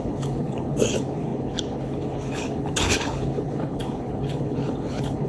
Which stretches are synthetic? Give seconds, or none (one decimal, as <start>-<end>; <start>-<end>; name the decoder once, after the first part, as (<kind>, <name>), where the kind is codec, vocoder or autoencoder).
0.0-5.3 (codec, HILCodec)